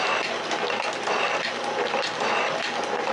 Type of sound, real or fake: real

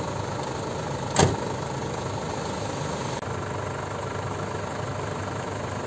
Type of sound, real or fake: real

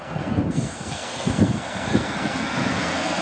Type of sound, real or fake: fake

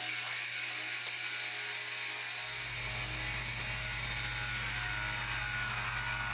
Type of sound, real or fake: real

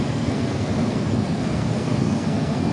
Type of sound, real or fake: fake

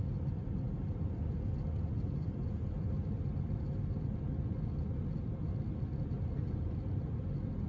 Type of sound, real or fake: real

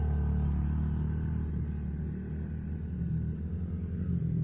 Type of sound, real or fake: real